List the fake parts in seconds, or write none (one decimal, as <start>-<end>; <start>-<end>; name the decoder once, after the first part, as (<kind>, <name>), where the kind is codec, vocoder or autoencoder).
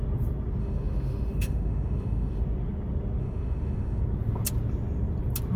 0.6-2.4 (autoencoder, DAC-VAE); 3.2-4.0